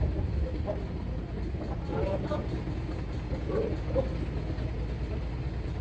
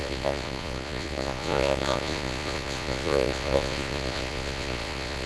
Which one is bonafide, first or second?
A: first